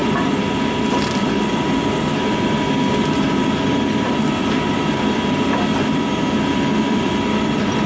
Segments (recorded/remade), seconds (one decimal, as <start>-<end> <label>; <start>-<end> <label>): 0.0-7.9 recorded

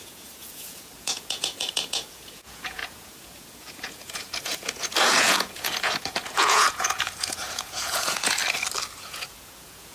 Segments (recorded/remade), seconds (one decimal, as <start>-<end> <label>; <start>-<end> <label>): 0.0-8.4 remade; 8.4-9.0 recorded; 9.0-9.9 remade

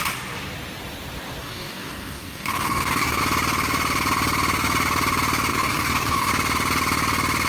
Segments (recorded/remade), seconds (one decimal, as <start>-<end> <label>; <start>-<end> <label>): 0.0-1.4 recorded; 1.4-3.2 remade; 3.2-5.5 recorded; 5.5-6.3 remade; 6.3-7.5 recorded

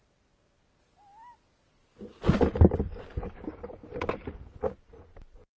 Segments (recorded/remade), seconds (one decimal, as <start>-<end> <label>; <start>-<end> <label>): 0.0-5.6 recorded

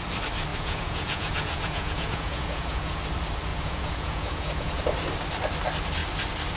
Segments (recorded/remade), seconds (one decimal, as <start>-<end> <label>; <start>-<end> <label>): 0.0-0.5 recorded; 0.5-3.0 remade; 3.0-3.5 recorded; 3.5-4.8 remade; 4.8-6.6 recorded

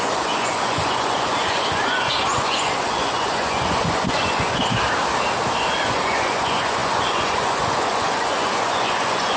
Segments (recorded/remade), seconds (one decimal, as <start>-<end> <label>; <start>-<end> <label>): 0.0-4.6 remade; 4.6-5.8 recorded; 5.8-9.4 remade

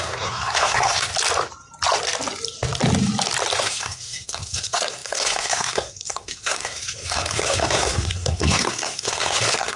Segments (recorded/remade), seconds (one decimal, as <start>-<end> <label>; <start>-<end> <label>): 0.0-1.1 remade; 1.1-3.6 recorded; 3.6-9.8 remade